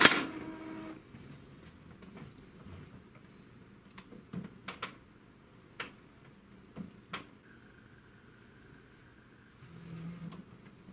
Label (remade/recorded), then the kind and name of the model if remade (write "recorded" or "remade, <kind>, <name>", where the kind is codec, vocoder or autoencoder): recorded